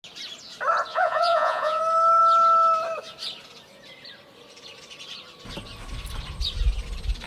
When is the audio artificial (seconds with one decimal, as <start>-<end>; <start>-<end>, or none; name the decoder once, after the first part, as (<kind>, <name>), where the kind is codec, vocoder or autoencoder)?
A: 0.9-1.8 (vocoder, Vocos)